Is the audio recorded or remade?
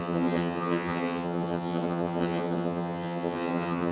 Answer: remade